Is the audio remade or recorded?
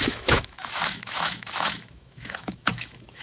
remade